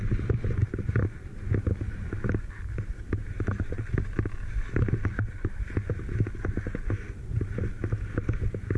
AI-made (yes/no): no